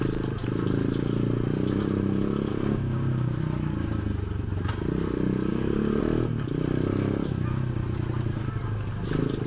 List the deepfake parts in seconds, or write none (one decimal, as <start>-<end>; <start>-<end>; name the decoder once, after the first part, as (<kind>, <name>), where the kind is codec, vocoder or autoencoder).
2.5-3.4 (codec, DAC); 5.5-6.0